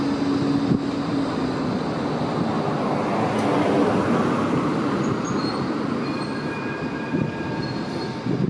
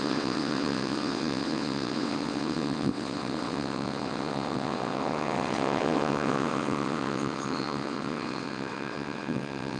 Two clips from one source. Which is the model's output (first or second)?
second